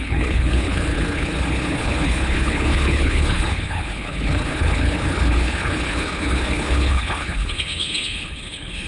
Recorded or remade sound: remade